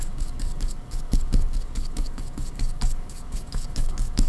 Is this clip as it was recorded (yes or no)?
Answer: no